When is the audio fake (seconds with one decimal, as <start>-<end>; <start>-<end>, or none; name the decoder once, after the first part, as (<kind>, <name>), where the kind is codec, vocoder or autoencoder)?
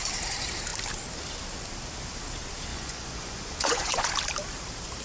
2.7-4.0 (vocoder, Vocos)